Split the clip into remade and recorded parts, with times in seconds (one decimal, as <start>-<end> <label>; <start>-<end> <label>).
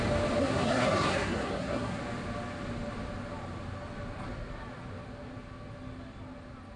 0.0-0.4 recorded; 0.4-2.0 remade; 2.0-6.8 recorded